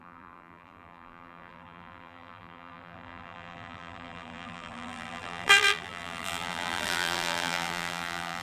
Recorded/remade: remade